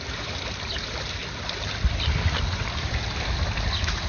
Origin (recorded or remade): recorded